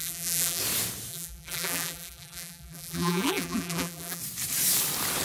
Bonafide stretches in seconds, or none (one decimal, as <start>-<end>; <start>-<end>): 0.6-1.1; 4.2-5.2